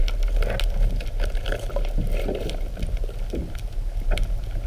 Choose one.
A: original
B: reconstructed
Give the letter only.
A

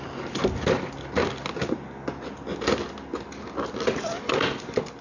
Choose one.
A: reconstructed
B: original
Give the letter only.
B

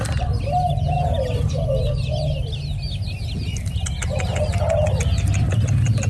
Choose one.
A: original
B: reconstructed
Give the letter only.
A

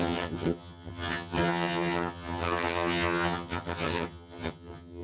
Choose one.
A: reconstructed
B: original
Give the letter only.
A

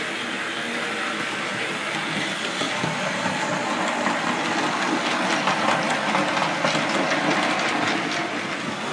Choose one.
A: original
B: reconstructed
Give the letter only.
A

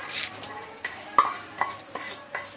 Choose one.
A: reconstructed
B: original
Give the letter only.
B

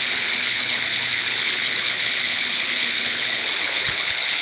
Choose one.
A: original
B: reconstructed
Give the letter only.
B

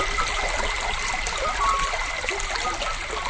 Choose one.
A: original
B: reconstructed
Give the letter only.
A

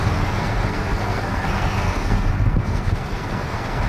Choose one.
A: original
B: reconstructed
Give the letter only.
B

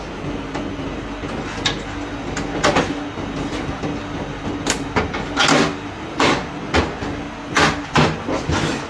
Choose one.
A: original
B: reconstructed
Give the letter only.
A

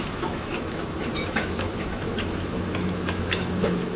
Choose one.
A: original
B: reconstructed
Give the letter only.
B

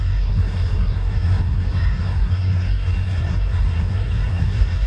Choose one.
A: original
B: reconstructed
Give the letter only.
B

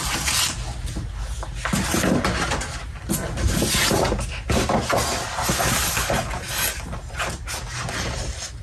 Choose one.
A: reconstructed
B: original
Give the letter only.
B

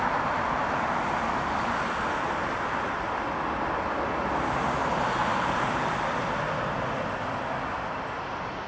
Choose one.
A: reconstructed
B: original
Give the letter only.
B